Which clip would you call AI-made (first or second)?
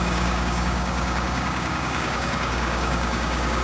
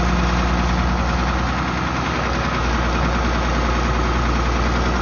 first